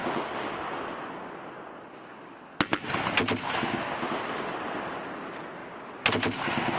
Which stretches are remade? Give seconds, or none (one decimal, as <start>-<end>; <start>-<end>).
none